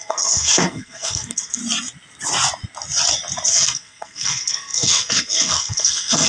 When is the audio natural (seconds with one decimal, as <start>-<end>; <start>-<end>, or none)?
1.6-3.5